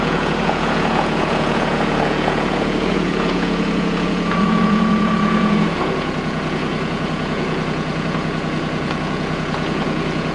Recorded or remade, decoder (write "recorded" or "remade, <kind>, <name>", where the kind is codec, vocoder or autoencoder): remade, vocoder, Vocos